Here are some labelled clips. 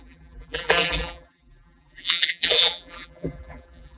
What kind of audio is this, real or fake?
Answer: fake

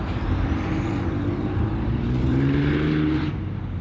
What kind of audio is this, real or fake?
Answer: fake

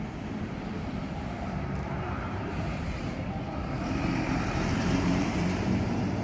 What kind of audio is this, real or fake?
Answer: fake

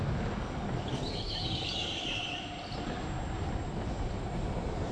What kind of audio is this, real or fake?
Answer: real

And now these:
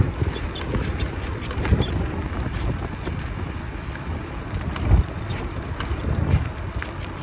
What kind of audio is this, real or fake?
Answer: real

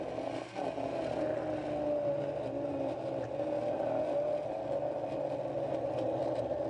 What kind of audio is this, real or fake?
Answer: real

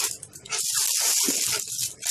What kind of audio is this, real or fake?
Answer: real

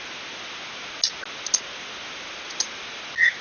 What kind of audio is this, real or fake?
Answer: real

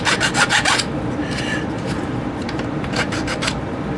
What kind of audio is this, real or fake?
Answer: fake